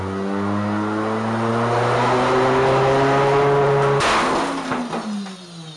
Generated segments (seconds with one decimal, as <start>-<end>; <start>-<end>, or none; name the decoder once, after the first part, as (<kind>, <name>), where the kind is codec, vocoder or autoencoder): none